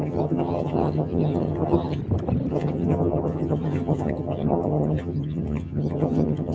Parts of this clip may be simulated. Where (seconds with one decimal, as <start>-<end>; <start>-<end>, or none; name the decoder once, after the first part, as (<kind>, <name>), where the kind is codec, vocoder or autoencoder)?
0.0-2.0 (vocoder, HiFi-GAN); 2.5-6.5